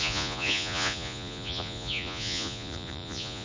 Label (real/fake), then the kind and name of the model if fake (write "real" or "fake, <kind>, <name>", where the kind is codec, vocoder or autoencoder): fake, vocoder, Vocos